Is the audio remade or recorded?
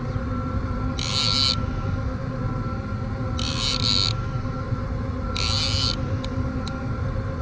recorded